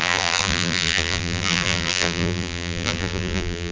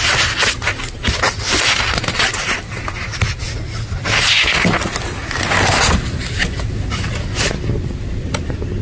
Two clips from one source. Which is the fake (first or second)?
first